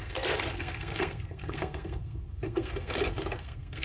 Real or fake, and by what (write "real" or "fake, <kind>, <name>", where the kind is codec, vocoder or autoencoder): fake, codec, SNAC